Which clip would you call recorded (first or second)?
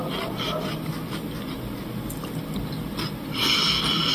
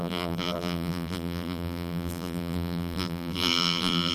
first